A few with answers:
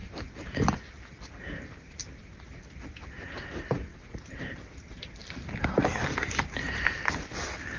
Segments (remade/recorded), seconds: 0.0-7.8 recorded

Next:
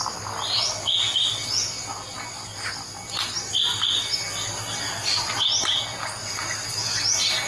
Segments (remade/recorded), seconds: 0.0-7.5 recorded

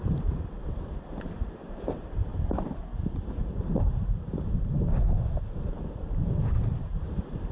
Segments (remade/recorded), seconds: 0.0-7.5 remade

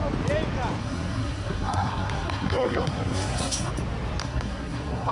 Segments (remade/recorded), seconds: 0.0-0.8 recorded; 0.8-3.7 remade; 3.7-4.2 recorded; 4.2-5.1 remade

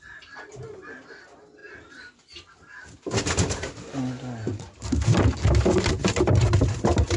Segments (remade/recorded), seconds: 0.0-7.2 recorded

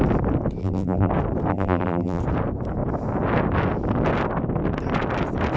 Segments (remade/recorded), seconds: 0.0-0.6 recorded; 0.6-1.1 remade; 1.1-1.5 recorded; 1.5-2.2 remade; 2.2-5.6 recorded

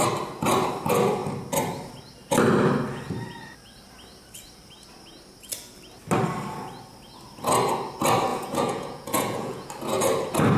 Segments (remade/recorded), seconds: 0.0-8.3 recorded; 8.3-9.7 remade; 9.7-10.6 recorded

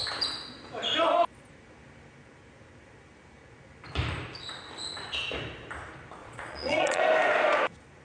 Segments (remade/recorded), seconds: 0.0-6.2 recorded; 6.2-7.0 remade; 7.0-8.0 recorded